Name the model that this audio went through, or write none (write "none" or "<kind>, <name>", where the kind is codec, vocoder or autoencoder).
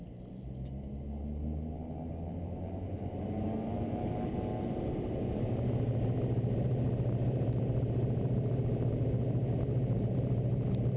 none